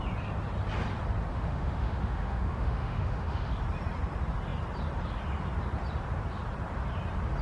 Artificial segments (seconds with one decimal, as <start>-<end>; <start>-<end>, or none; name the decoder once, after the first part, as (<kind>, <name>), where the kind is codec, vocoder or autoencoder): 1.3-3.5 (autoencoder, DAC-VAE)